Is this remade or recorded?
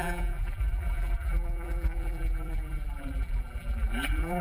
remade